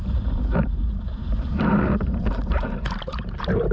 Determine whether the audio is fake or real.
fake